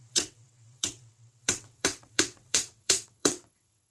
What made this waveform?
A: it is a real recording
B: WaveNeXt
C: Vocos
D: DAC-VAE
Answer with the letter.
B